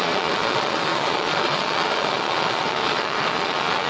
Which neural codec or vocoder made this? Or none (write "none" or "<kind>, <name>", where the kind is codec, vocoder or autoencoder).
vocoder, Vocos